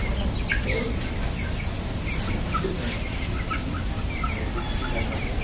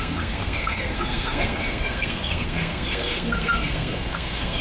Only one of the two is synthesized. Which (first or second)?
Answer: second